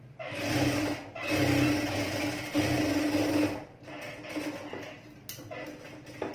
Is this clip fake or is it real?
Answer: real